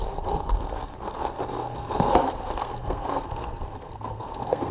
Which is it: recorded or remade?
remade